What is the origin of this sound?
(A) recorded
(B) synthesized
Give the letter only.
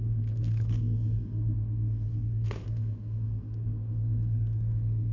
B